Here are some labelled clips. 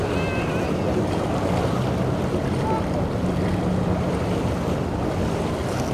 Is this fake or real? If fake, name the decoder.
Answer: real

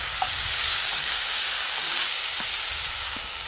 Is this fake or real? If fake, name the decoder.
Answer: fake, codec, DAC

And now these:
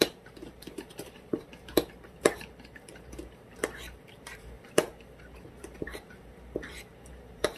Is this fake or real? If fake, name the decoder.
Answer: fake, vocoder, BigVGAN v2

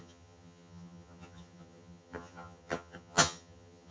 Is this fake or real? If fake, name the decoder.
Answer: fake, vocoder, HiFi-GAN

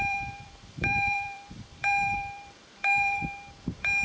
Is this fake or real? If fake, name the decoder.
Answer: fake, vocoder, BigVGAN v2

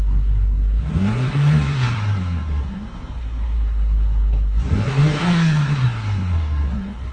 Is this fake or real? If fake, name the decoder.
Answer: fake, codec, SNAC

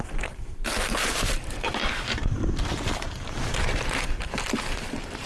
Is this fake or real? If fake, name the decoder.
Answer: fake, vocoder, BigVGAN v2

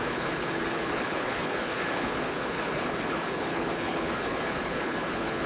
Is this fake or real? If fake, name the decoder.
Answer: fake, codec, HILCodec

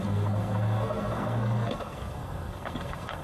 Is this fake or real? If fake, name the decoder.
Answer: fake, codec, SNAC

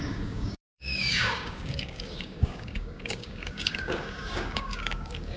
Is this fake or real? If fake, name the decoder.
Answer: fake, codec, DAC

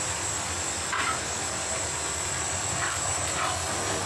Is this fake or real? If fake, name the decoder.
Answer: real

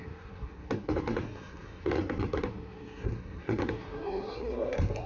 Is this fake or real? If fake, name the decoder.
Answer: fake, codec, SNAC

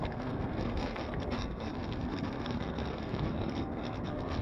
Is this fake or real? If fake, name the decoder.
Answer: fake, codec, SNAC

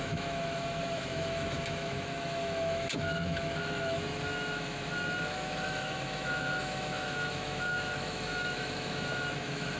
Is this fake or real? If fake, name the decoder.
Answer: fake, autoencoder, DAC-VAE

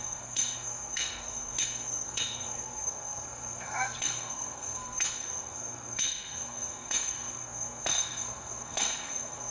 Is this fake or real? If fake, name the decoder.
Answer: fake, codec, SNAC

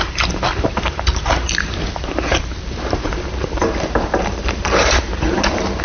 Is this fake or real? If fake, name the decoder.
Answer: fake, vocoder, BigVGAN v2